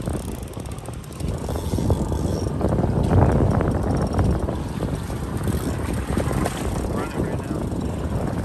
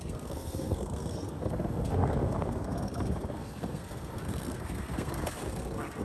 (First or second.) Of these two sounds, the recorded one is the first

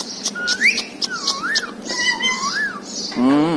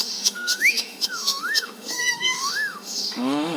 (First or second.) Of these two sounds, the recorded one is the first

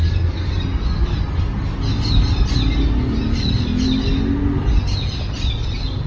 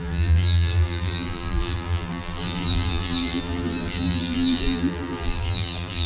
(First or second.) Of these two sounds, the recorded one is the first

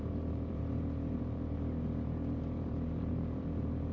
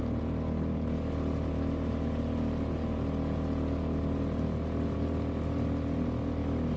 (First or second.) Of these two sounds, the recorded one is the second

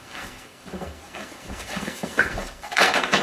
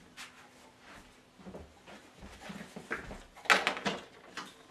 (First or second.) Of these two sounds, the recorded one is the second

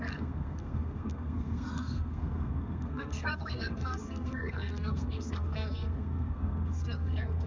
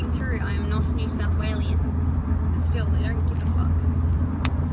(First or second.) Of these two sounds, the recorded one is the second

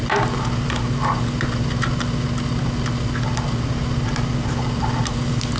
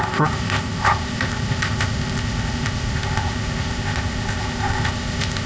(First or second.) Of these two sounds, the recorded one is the first